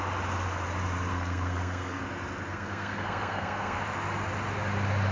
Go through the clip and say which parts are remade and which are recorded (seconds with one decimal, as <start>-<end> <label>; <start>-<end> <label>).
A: 0.0-1.1 recorded; 1.1-2.0 remade; 2.0-2.5 recorded; 2.5-3.8 remade; 3.8-5.1 recorded